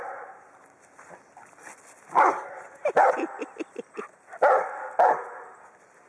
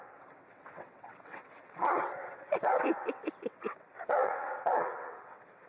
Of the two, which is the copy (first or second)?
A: second